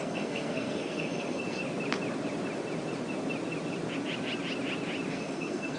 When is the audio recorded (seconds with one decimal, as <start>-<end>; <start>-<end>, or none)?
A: 1.6-5.1